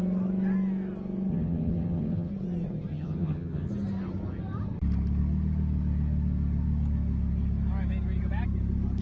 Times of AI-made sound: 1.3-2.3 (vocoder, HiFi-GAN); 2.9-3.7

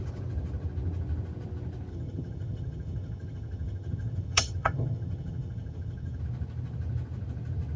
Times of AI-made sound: 1.9-6.2 (vocoder, HiFi-GAN)

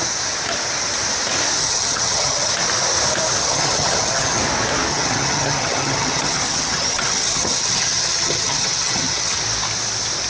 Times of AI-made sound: 1.6-2.5 (vocoder, HiFi-GAN); 3.4-4.4; 4.9-9.4

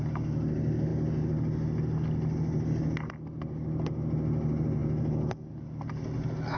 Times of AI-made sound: none